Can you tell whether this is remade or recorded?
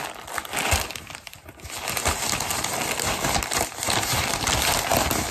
recorded